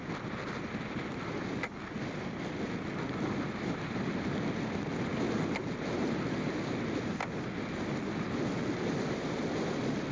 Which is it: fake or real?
real